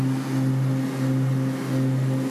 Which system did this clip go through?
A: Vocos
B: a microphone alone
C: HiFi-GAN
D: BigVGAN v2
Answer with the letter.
B